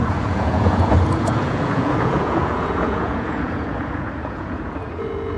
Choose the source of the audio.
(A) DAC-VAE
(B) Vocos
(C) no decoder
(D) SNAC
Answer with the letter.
B